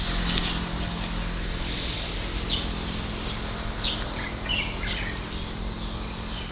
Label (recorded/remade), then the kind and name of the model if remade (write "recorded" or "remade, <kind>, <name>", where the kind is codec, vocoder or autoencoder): recorded